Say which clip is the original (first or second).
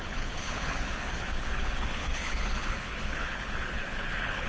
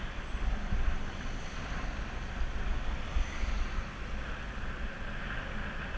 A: second